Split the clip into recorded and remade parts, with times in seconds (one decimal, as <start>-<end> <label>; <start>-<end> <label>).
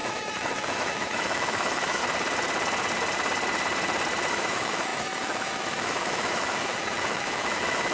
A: 0.0-2.0 remade; 2.0-4.3 recorded; 4.3-7.9 remade